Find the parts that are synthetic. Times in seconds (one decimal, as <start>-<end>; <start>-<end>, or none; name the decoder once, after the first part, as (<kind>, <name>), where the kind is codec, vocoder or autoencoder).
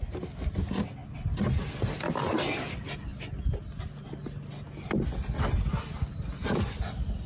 none